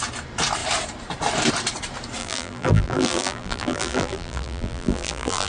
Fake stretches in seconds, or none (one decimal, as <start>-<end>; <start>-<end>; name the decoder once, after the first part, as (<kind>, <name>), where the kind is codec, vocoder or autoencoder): 2.2-5.5 (vocoder, BigVGAN v2)